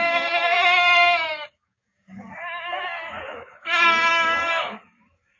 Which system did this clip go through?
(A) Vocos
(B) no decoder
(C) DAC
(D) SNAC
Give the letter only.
C